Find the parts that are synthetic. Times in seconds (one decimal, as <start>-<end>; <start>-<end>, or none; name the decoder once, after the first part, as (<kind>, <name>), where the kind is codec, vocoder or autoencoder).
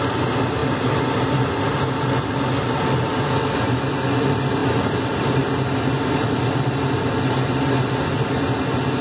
none